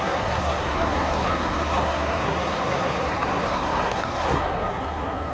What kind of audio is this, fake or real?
fake